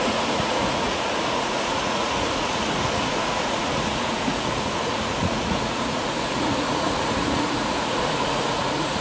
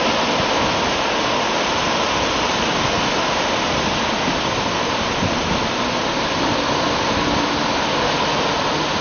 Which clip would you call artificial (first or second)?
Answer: first